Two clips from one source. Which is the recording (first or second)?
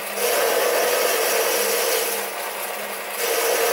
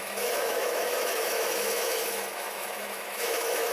first